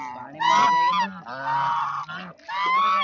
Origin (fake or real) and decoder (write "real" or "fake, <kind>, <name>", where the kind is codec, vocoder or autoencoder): real